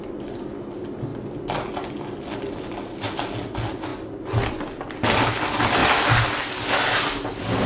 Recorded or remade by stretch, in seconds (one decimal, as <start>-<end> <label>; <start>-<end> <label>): 0.0-7.7 recorded